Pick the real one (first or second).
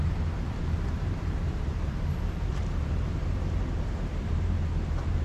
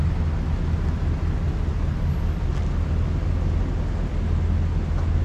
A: second